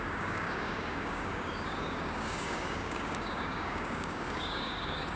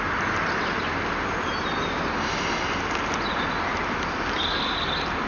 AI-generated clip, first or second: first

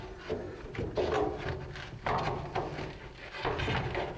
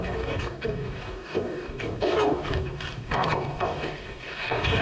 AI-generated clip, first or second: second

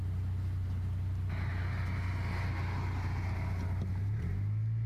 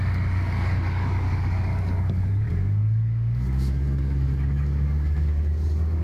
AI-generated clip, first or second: second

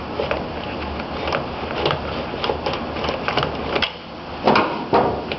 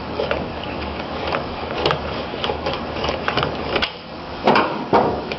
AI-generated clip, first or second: second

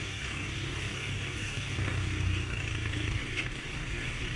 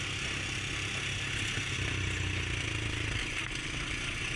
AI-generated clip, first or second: first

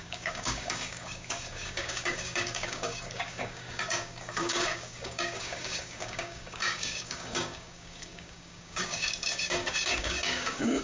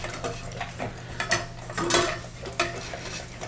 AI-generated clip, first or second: first